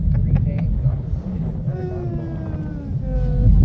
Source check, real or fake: real